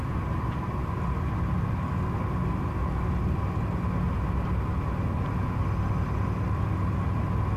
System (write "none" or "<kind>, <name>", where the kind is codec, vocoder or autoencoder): none